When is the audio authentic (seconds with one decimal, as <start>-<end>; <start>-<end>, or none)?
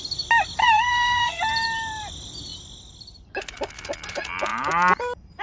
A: 0.0-0.6; 1.4-5.4